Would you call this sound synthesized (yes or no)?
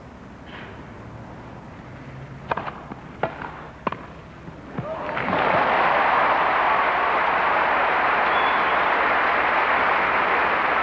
no